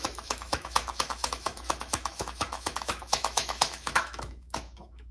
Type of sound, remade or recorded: remade